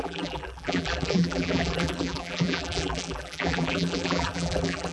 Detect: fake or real fake